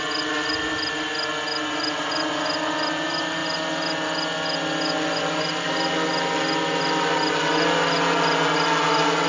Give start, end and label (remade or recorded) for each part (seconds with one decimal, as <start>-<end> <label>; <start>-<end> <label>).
0.0-9.3 recorded